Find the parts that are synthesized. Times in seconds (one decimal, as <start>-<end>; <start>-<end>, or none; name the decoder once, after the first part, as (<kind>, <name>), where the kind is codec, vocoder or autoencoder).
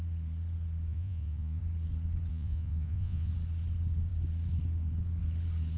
0.9-1.6 (vocoder, Vocos); 2.3-3.3